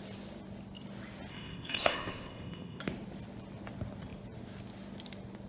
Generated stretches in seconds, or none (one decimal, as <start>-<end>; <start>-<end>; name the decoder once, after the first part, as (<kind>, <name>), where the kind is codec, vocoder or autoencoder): 1.3-2.8 (codec, ZipCodec)